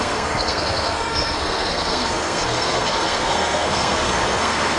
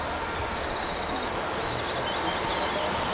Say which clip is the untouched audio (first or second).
second